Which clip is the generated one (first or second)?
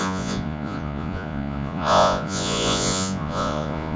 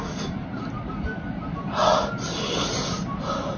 first